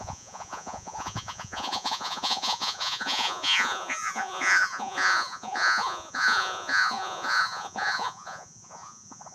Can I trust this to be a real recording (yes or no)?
no